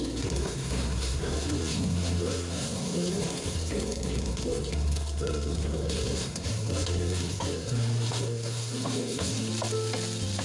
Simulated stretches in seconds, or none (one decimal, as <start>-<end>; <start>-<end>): 0.0-9.5